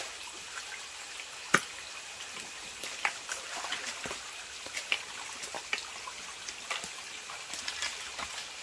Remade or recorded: recorded